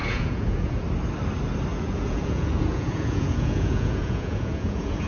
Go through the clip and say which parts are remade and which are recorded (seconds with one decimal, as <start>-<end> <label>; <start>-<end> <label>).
0.0-0.8 remade; 0.8-1.7 recorded; 1.7-5.1 remade